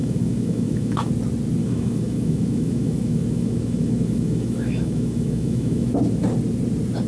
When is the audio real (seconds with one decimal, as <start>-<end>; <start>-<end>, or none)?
1.1-1.6; 5.9-7.1